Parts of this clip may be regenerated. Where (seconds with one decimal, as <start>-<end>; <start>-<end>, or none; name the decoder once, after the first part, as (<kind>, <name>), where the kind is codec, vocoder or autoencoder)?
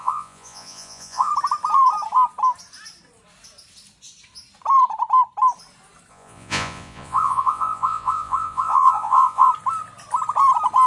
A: 0.0-1.3 (vocoder, Vocos); 6.1-9.5